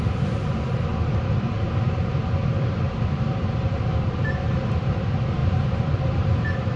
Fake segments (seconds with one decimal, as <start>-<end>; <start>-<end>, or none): 0.0-6.8